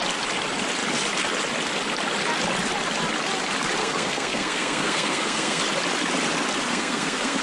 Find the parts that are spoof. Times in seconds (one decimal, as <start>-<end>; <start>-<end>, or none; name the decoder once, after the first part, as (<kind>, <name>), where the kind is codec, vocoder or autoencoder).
3.8-5.6 (codec, SNAC); 6.7-7.4